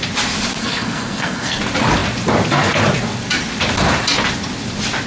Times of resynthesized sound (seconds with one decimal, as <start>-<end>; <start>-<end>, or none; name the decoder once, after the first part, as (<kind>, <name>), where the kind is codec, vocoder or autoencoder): 0.6-1.6 (codec, SNAC)